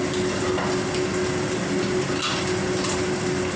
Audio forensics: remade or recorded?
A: recorded